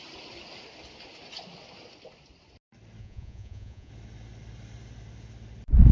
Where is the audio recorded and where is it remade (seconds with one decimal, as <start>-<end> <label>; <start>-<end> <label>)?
0.0-3.0 recorded; 3.0-3.9 remade; 3.9-5.9 recorded